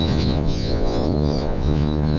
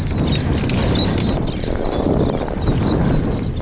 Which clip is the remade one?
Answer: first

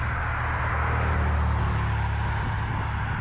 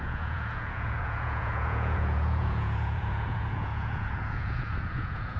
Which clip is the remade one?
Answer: second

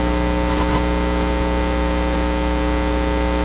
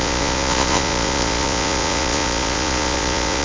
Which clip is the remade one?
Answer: second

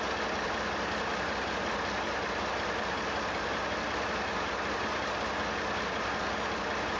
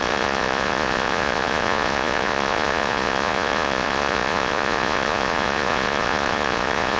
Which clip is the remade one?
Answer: second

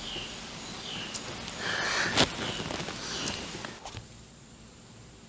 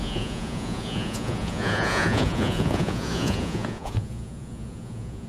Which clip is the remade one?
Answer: second